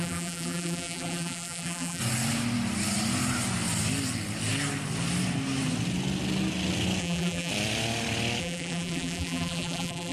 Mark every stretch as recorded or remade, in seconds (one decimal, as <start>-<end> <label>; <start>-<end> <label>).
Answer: 0.0-2.0 remade; 2.0-7.0 recorded; 7.0-7.5 remade; 7.5-8.4 recorded; 8.4-10.1 remade